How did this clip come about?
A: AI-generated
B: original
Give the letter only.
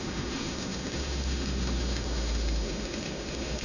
A